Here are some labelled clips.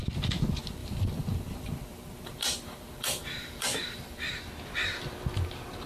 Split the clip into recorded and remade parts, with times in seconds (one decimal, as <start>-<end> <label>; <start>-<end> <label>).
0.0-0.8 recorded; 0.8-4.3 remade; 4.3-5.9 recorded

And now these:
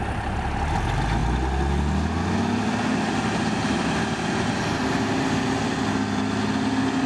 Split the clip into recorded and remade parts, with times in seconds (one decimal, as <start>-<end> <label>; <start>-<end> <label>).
0.0-7.1 recorded

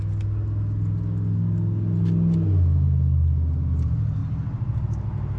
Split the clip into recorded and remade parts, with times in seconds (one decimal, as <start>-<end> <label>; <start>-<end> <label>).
0.0-5.4 recorded

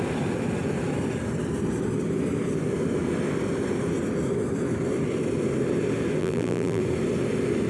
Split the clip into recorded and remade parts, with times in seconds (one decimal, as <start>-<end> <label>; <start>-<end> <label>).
0.0-6.2 recorded; 6.2-6.8 remade; 6.8-7.7 recorded